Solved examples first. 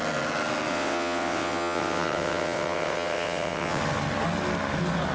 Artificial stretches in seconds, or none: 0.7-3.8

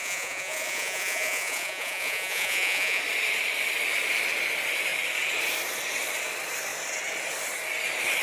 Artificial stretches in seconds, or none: 0.0-3.0

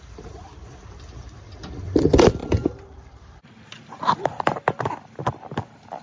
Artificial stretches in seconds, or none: 0.0-6.0

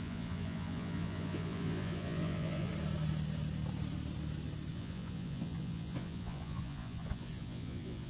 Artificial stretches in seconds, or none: 0.0-2.7; 4.7-8.1

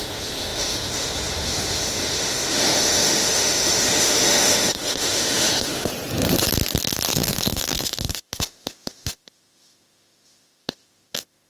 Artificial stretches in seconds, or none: 0.0-5.9; 7.1-11.5

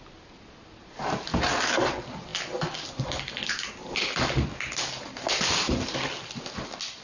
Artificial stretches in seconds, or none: none

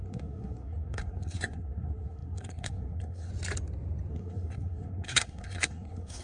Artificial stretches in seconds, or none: 0.0-3.3; 4.1-6.2

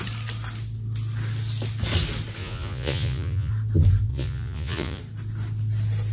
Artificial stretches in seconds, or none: 2.4-3.5; 4.1-5.0